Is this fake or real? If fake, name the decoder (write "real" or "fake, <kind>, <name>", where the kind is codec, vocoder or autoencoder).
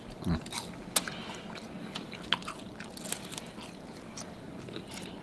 real